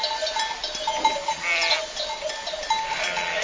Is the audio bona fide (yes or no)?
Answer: yes